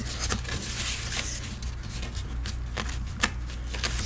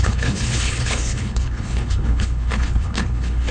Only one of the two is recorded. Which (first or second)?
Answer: first